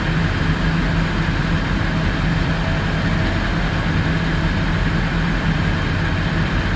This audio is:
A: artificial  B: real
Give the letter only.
B